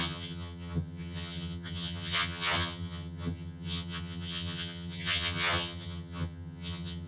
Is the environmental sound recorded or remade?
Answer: remade